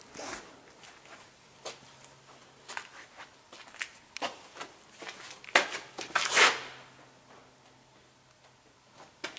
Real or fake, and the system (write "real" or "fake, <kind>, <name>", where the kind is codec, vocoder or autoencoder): real